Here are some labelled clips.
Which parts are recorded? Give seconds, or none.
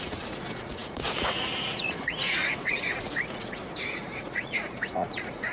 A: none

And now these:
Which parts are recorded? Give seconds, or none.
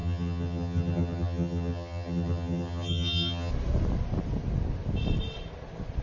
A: 3.5-6.0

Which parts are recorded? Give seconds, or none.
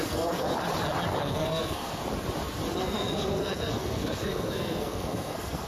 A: 0.5-1.2; 2.0-2.8